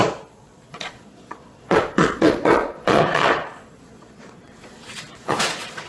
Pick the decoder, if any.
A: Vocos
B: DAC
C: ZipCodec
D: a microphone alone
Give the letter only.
A